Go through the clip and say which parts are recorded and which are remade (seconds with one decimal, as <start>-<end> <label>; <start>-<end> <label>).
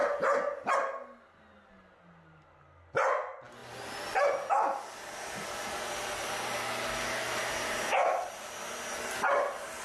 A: 0.0-9.8 recorded